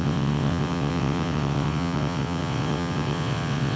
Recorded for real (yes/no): no